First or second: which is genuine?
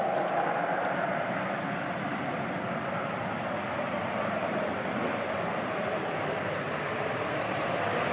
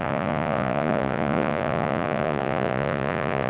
first